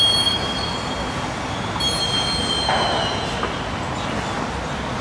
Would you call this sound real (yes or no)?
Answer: yes